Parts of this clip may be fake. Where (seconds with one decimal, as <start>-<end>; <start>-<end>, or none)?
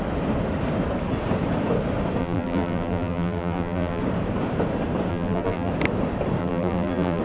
2.2-4.0; 5.1-5.7; 6.4-7.2